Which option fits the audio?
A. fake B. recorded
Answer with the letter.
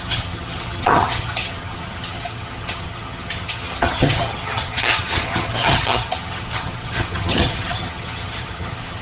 A